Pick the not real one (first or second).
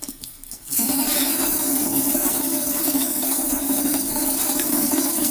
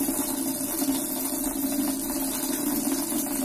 first